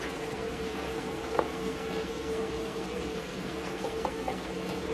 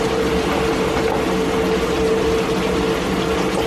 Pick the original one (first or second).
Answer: second